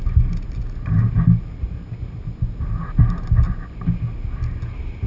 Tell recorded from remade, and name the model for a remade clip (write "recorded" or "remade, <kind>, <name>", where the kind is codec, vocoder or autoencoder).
recorded